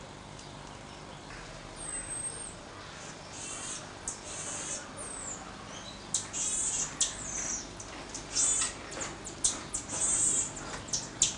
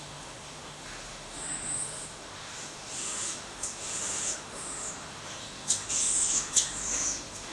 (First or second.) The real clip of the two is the first